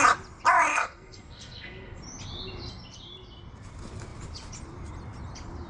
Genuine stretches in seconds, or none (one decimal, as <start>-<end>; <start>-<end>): 0.0-0.7; 2.0-5.7